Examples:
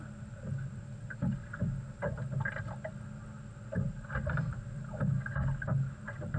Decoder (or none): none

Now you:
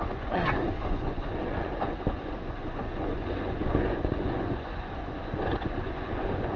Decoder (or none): vocoder, Vocos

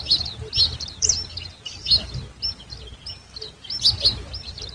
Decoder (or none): none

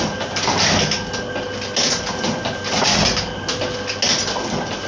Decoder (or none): none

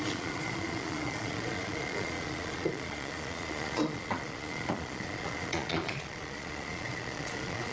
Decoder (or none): vocoder, Vocos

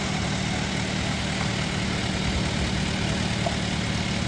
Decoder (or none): none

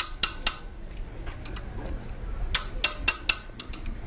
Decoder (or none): none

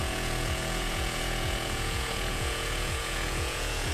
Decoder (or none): vocoder, Vocos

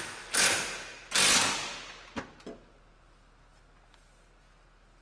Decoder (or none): none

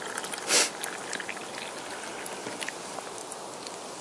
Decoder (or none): none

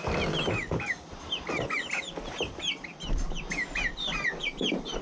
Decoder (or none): none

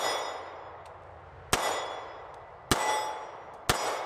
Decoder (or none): none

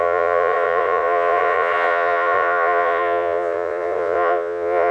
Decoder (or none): vocoder, Vocos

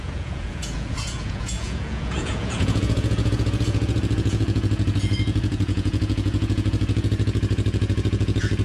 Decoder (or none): vocoder, Vocos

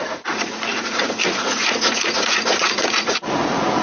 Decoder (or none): vocoder, Vocos